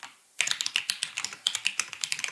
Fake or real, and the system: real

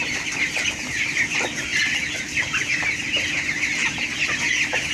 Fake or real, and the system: real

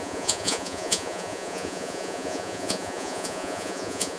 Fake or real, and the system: fake, vocoder, Vocos